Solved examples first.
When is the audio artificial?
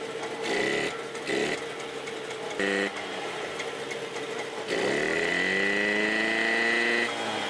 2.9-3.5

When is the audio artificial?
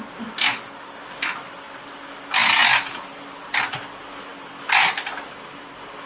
none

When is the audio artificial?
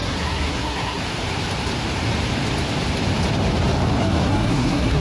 0.0-1.0; 4.0-5.0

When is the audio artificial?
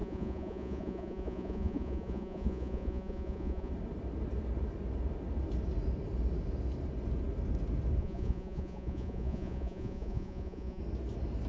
0.0-3.7; 8.0-10.8